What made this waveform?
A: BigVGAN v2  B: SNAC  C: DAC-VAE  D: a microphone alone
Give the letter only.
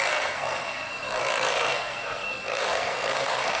B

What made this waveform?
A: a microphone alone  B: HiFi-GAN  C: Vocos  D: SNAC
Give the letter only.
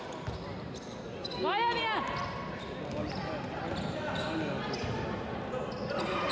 A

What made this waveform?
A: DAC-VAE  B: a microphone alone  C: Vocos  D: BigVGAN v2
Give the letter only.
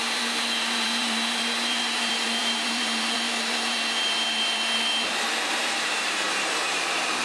D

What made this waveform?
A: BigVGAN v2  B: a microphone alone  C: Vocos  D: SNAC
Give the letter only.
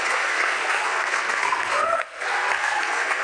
D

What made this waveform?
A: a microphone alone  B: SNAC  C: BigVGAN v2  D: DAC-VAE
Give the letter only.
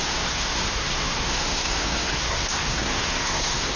B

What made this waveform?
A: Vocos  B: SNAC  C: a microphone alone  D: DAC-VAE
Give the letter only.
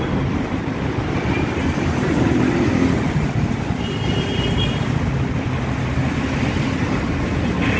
C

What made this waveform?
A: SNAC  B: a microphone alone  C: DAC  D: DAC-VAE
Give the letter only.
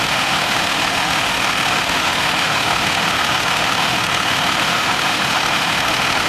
D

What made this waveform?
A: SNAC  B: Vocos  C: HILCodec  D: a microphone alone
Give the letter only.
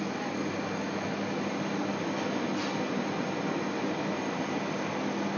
D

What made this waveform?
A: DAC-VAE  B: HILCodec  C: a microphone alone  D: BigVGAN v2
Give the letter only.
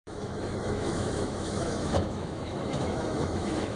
A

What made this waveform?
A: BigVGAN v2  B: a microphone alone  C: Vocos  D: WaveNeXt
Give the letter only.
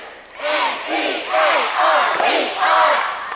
B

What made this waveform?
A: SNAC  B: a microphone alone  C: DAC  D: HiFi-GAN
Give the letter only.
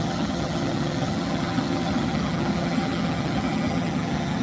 D